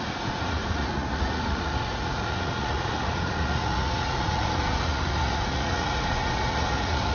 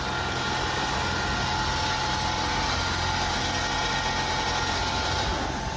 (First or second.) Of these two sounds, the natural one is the second